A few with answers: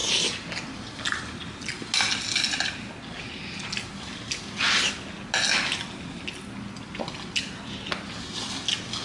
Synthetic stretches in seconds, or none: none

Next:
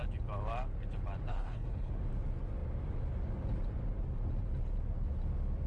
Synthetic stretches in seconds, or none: 1.3-1.9 (codec, HILCodec)

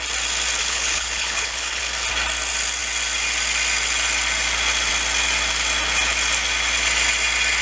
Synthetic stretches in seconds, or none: 0.6-1.8 (codec, HILCodec)

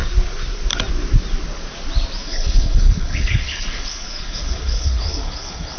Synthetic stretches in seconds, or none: 2.2-5.8 (codec, HILCodec)

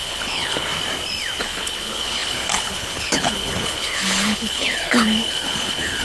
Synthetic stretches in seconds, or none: 0.0-0.7 (codec, HILCodec); 1.4-6.0